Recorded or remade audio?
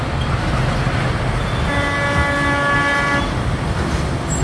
recorded